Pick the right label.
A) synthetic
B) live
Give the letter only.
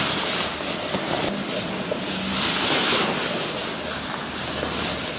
B